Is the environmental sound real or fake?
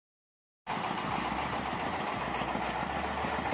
real